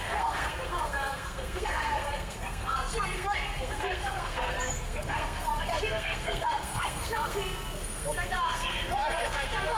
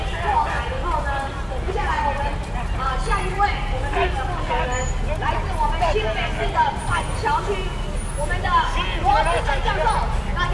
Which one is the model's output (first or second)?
first